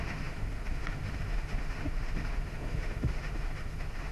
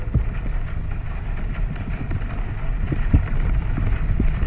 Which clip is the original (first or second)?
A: second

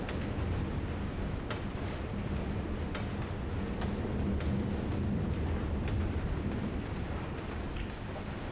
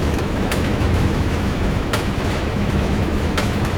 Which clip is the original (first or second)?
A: first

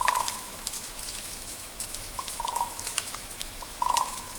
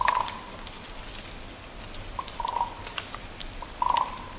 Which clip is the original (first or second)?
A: second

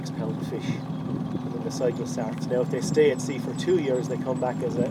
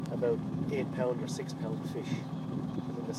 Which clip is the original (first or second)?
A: first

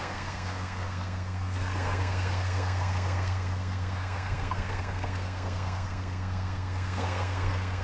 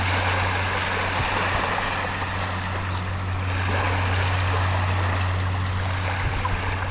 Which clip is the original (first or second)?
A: second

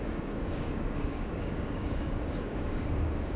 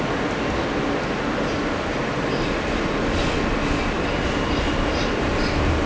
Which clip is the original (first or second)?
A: second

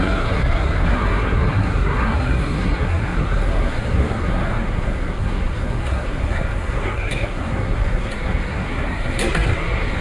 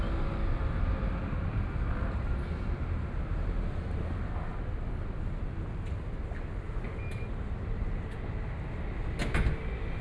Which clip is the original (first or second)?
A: second